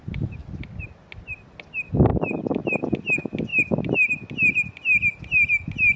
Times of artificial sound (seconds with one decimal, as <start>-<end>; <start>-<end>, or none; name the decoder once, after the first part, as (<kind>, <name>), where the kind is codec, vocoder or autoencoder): none